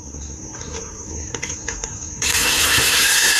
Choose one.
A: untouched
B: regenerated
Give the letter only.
B